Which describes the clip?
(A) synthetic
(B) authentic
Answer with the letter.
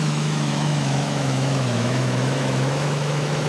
A